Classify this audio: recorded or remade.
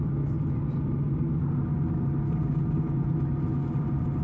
recorded